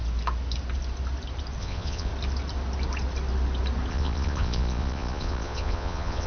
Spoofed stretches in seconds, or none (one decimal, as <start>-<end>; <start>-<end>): 1.6-2.1; 3.9-6.3

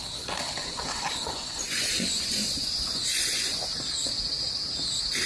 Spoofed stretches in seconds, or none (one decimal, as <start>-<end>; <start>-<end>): 0.6-3.8

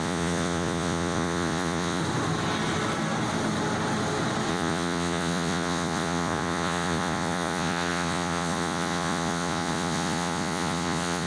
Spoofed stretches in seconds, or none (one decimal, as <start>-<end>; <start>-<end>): 0.0-2.0; 4.5-11.3

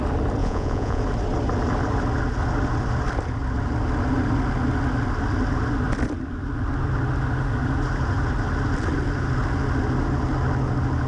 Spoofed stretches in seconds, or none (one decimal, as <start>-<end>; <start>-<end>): 0.4-1.0